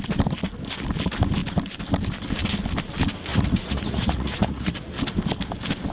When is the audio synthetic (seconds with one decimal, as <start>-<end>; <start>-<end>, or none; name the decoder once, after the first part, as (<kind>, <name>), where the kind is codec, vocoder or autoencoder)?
3.3-4.9 (vocoder, Vocos)